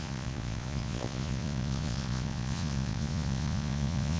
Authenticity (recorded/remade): remade